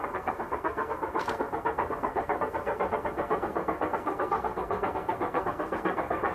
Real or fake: fake